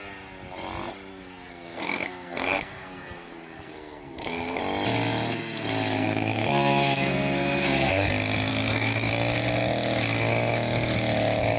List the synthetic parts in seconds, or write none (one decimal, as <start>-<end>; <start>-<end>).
1.1-4.6; 5.9-8.1; 8.5-9.1